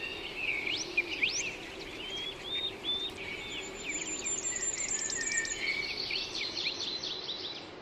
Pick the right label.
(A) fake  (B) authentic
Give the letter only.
B